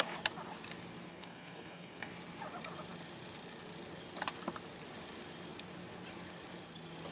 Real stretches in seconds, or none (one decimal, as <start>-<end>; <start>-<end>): 0.0-1.1; 2.1-7.1